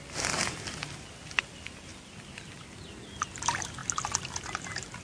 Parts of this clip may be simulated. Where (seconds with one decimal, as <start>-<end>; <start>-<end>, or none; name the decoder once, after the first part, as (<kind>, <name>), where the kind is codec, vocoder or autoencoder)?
none